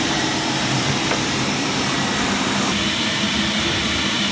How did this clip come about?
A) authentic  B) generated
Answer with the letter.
B